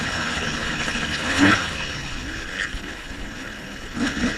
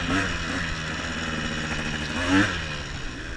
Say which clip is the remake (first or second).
first